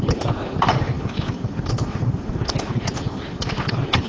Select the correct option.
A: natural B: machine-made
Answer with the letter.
A